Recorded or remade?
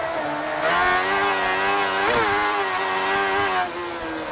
recorded